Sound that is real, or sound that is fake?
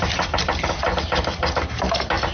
real